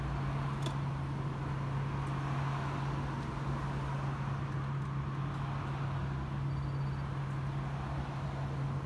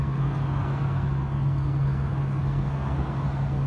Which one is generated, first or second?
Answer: second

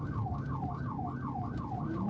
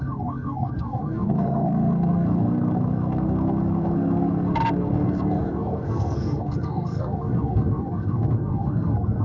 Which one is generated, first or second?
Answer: second